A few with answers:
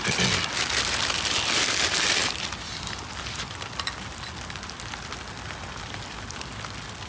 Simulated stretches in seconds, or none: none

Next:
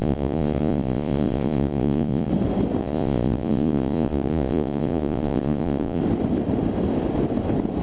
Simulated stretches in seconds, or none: 0.0-2.3 (vocoder, Vocos); 2.8-6.0

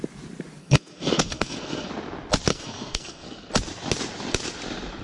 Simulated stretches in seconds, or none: 0.6-1.9 (codec, SNAC); 2.5-3.5

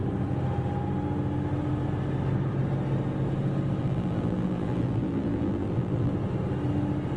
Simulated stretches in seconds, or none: 3.8-6.1 (vocoder, BigVGAN v2)

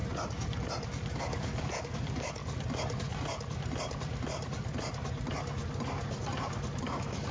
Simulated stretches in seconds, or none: 1.2-2.4 (codec, DAC); 6.8-7.3

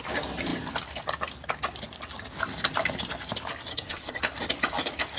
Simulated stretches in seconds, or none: 3.7-4.2 (codec, SNAC)

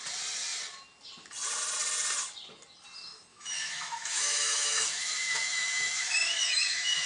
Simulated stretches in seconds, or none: 3.3-7.1 (autoencoder, DAC-VAE)

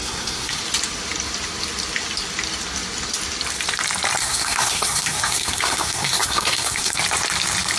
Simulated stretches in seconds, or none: 0.0-0.6 (codec, SNAC); 4.2-7.0